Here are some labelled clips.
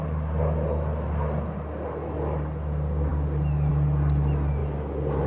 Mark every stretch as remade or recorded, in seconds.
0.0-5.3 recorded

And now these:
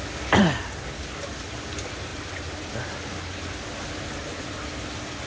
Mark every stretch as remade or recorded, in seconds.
0.0-5.3 recorded

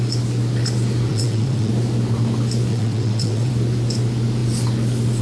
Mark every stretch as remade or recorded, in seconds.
0.0-1.1 recorded; 1.1-1.7 remade; 1.7-2.7 recorded; 2.7-3.5 remade; 3.5-5.2 recorded

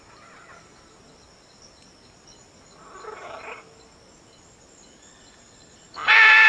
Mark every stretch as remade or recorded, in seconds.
0.0-6.5 recorded

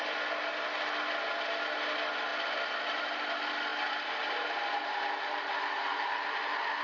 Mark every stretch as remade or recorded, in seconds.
0.0-6.8 recorded

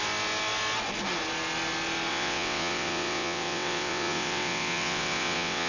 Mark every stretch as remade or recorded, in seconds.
0.0-2.1 recorded; 2.1-5.7 remade

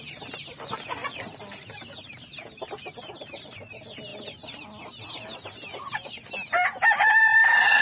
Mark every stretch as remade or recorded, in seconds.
0.0-7.8 recorded

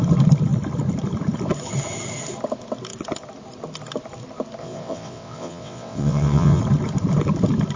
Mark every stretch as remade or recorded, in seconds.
0.0-4.6 recorded; 4.6-6.6 remade; 6.6-7.8 recorded